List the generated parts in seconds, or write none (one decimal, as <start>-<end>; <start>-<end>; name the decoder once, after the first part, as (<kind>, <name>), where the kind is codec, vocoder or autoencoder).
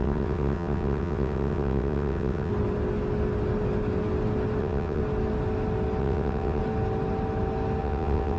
0.0-2.5 (vocoder, WaveNeXt); 4.6-5.0; 6.0-6.6; 7.8-8.4